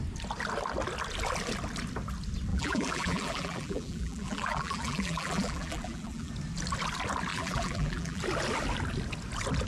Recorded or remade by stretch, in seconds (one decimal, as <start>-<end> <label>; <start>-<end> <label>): 0.0-2.5 recorded; 2.5-6.3 remade; 6.3-7.3 recorded; 7.3-8.2 remade; 8.2-9.7 recorded